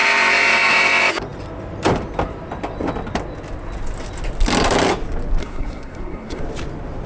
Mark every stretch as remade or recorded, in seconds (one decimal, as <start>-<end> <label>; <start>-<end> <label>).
0.0-5.4 recorded; 5.4-6.4 remade; 6.4-7.1 recorded